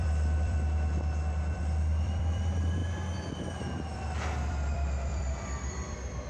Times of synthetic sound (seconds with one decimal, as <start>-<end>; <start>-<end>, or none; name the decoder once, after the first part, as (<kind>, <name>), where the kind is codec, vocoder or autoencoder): 0.0-2.8 (vocoder, BigVGAN v2); 3.6-6.3